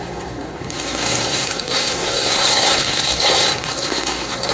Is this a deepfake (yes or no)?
yes